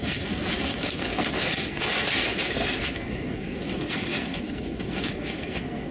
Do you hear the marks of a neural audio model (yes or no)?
yes